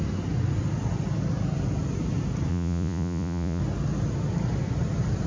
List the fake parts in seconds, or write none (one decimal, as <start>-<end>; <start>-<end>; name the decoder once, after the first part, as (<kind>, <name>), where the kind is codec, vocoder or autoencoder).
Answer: 2.5-3.6 (vocoder, Vocos)